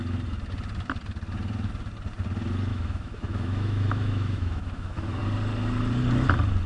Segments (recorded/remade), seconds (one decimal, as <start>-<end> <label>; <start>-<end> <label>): 0.0-2.7 recorded; 2.7-5.2 remade; 5.2-6.7 recorded